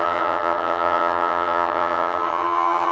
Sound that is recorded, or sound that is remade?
remade